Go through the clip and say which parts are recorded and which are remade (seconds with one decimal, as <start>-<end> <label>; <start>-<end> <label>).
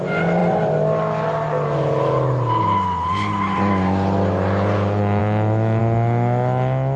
0.0-7.0 recorded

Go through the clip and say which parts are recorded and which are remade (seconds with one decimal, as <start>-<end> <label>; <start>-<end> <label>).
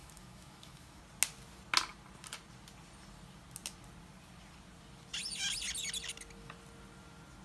0.0-1.0 remade; 1.0-7.4 recorded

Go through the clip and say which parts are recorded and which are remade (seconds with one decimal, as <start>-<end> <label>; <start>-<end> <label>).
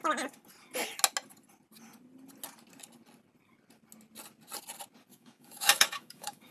0.0-5.1 recorded; 5.1-6.5 remade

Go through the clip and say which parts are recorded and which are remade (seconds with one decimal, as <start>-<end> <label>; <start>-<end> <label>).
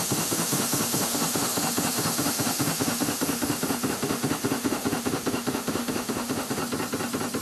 0.0-6.6 remade; 6.6-7.4 recorded